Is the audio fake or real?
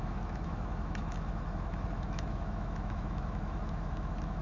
fake